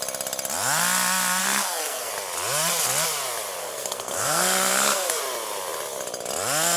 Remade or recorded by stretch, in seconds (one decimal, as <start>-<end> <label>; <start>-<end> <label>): 0.0-1.4 recorded; 1.4-2.1 remade; 2.1-3.6 recorded; 3.6-5.2 remade; 5.2-6.8 recorded